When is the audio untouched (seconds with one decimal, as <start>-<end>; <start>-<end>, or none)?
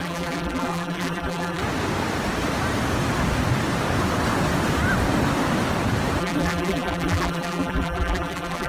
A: 1.6-6.2